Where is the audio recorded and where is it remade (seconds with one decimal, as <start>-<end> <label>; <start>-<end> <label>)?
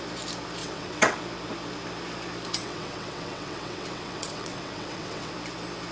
0.0-0.6 recorded; 0.6-1.2 remade; 1.2-2.6 recorded; 2.6-5.3 remade; 5.3-5.9 recorded